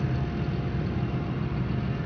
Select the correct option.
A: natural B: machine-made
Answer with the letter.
A